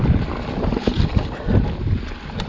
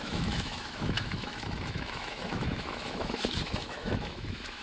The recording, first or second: first